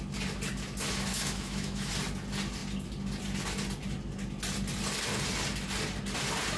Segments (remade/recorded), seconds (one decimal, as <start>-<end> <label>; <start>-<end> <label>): 0.0-1.1 recorded; 1.1-1.9 remade; 1.9-6.6 recorded